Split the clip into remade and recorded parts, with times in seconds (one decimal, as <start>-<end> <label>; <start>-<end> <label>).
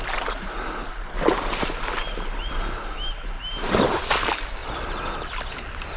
0.0-6.0 recorded